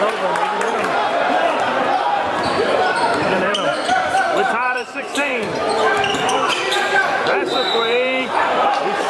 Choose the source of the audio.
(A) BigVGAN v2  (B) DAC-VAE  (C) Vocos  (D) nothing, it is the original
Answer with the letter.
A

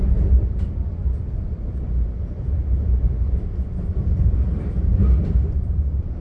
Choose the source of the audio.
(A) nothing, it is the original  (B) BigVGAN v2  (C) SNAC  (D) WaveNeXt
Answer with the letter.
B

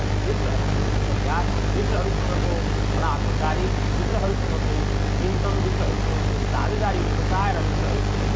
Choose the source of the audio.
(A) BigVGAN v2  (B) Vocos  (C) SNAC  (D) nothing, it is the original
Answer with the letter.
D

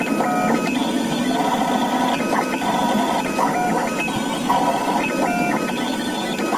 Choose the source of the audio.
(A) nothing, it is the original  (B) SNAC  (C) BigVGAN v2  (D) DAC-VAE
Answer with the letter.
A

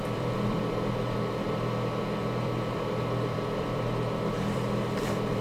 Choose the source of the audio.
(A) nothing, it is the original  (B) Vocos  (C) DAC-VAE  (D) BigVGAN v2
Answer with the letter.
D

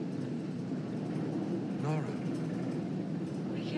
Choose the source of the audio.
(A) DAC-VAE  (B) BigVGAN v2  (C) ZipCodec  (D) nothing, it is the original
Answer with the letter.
D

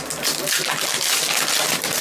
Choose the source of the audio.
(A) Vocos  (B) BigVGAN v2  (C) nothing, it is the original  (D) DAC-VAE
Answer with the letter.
C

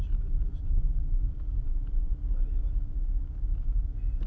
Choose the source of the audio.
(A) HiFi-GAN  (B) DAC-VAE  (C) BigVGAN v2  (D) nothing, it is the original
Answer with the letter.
C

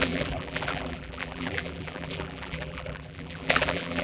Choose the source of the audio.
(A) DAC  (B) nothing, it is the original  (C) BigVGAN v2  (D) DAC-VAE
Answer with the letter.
C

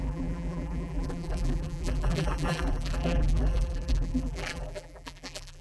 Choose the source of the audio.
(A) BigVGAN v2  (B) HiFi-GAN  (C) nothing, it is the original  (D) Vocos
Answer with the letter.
A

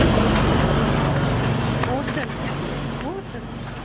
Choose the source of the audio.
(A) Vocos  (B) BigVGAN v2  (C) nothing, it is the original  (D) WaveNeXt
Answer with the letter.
C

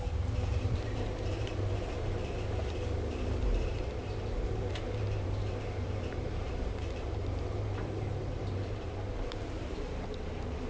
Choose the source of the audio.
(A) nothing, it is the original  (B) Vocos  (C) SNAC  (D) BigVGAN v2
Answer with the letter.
D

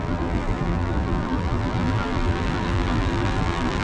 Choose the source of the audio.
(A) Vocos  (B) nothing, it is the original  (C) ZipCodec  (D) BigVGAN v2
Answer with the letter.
D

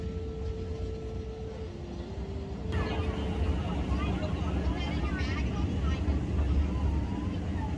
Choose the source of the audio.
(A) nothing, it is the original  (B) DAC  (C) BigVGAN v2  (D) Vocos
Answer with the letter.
A